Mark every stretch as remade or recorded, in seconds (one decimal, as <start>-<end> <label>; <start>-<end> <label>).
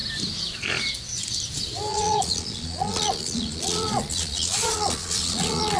0.0-1.9 recorded; 1.9-5.8 remade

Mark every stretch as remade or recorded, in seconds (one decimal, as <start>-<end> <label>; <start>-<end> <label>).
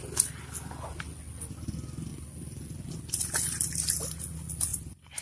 0.0-2.1 recorded; 2.1-2.9 remade; 2.9-4.7 recorded; 4.7-5.2 remade